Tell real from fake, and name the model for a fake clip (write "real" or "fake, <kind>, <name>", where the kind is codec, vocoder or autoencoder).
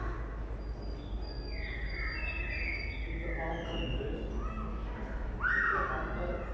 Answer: real